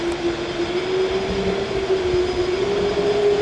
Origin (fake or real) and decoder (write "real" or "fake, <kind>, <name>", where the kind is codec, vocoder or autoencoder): real